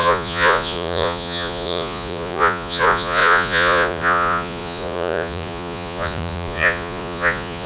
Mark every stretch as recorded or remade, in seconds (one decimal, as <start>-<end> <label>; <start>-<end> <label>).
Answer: 0.0-7.7 remade